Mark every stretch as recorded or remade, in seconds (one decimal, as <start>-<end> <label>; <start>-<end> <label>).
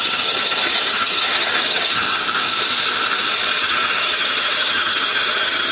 0.0-2.2 remade; 2.2-3.6 recorded; 3.6-5.7 remade